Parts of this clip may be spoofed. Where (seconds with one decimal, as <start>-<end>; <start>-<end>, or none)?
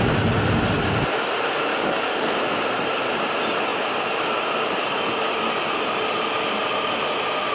1.7-2.4